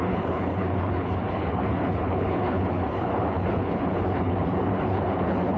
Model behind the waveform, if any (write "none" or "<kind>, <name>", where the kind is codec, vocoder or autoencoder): codec, HILCodec